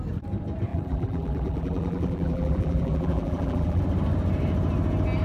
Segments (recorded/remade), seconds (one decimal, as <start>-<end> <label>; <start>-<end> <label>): 0.0-0.7 recorded; 0.7-3.8 remade; 3.8-5.2 recorded

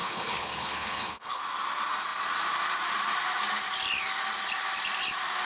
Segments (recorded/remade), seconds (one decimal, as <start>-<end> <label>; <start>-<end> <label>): 0.0-1.4 remade; 1.4-5.4 recorded

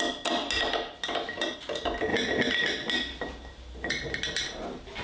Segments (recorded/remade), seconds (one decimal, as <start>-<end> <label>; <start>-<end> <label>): 0.0-5.0 recorded

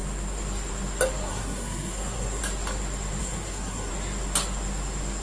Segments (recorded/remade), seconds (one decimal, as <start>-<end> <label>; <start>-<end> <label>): 0.0-1.3 recorded; 1.3-2.4 remade; 2.4-3.2 recorded; 3.2-3.9 remade; 3.9-5.2 recorded

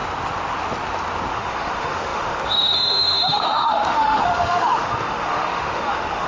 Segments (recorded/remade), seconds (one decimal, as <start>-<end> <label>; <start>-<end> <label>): 0.0-1.3 recorded; 1.3-6.3 remade

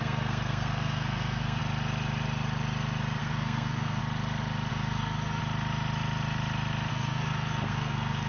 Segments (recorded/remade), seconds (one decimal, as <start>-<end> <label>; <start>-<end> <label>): 0.0-1.6 remade; 1.6-3.2 recorded; 3.2-4.0 remade; 4.0-4.7 recorded; 4.7-5.4 remade; 5.4-6.9 recorded; 6.9-8.3 remade

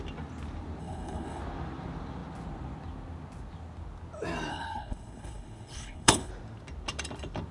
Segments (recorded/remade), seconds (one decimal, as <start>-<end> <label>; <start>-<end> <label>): 0.0-0.8 recorded; 0.8-1.4 remade; 1.4-4.5 recorded; 4.5-6.3 remade; 6.3-7.5 recorded

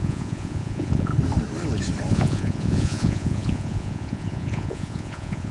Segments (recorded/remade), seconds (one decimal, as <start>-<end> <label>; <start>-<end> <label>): 0.0-1.1 remade; 1.1-2.1 recorded; 2.1-5.5 remade